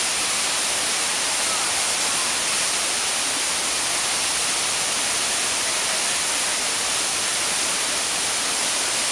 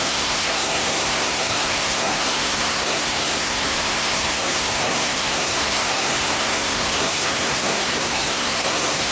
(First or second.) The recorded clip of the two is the first